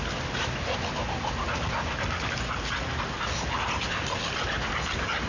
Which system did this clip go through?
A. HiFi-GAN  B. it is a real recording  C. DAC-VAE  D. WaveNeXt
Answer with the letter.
B